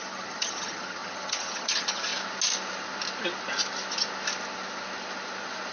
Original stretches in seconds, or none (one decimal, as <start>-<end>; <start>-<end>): 2.1-5.7